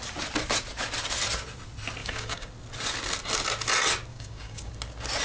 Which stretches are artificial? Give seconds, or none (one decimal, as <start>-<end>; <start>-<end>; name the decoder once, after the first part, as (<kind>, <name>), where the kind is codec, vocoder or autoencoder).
2.0-2.5 (codec, DAC); 4.1-4.7